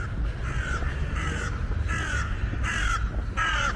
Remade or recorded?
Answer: recorded